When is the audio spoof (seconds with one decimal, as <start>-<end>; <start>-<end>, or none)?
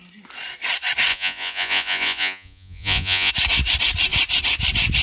1.1-3.3